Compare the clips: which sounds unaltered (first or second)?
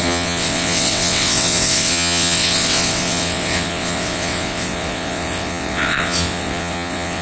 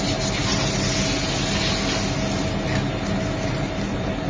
second